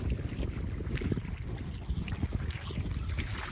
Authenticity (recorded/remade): recorded